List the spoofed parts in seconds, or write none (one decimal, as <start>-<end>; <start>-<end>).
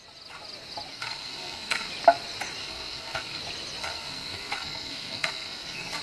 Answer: 0.9-1.9; 2.6-3.4; 3.8-6.0